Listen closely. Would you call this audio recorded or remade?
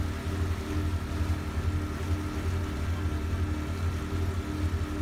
recorded